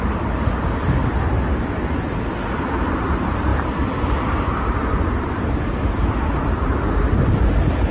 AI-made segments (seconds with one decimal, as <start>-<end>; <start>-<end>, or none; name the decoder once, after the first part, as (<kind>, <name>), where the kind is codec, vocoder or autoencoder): none